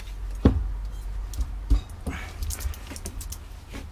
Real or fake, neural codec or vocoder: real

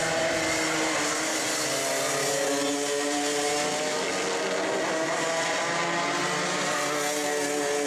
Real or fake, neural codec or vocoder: real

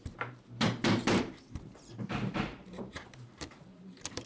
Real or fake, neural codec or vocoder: fake, vocoder, BigVGAN v2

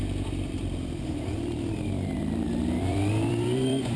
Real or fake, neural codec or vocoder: fake, vocoder, BigVGAN v2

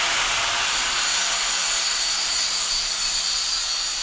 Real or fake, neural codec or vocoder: fake, vocoder, BigVGAN v2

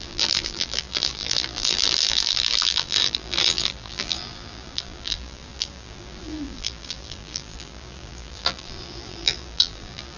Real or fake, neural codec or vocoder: fake, vocoder, BigVGAN v2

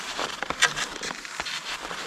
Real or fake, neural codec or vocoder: fake, vocoder, BigVGAN v2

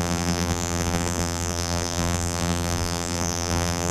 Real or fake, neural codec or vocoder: fake, vocoder, BigVGAN v2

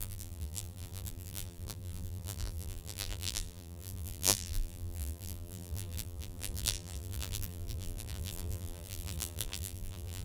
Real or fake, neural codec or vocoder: fake, vocoder, BigVGAN v2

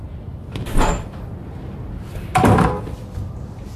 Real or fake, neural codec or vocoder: real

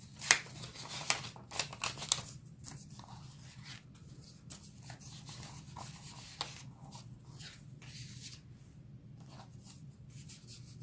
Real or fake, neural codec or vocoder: real